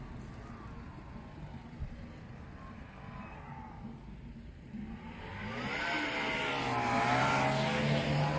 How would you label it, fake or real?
real